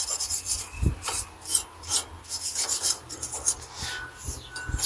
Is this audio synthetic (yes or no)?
no